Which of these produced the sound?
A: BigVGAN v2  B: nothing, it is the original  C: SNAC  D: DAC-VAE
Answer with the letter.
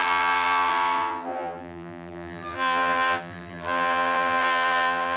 A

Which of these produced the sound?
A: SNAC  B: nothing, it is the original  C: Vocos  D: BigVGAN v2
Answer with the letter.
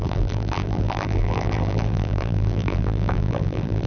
D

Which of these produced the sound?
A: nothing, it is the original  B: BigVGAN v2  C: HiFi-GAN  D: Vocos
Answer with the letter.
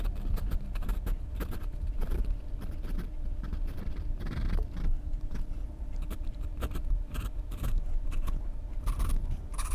B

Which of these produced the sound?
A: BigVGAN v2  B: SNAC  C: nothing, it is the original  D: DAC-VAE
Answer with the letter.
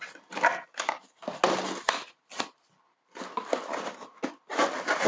C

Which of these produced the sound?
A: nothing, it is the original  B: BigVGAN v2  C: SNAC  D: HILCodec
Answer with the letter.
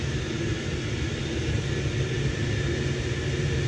A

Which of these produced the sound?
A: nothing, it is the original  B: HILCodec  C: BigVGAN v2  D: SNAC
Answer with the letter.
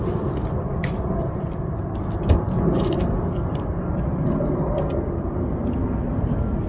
C